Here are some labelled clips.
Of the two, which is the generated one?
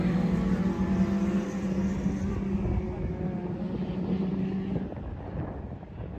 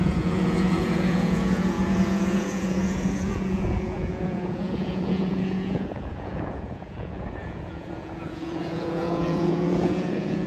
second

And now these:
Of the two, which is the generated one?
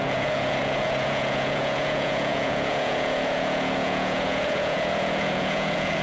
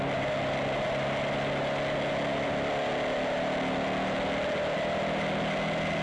first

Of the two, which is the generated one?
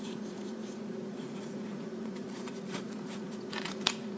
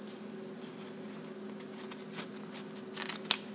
first